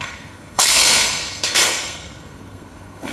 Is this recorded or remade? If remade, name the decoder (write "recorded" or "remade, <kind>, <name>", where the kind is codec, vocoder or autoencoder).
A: remade, codec, SNAC